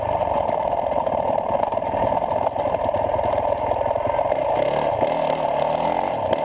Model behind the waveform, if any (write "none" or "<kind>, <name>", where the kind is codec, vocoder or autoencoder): none